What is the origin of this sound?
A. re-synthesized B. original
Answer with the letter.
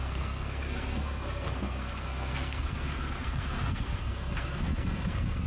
A